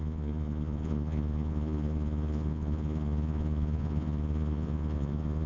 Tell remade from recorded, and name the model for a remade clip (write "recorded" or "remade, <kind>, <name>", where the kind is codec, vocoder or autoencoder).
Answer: remade, vocoder, Vocos